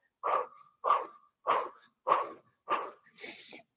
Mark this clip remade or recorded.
recorded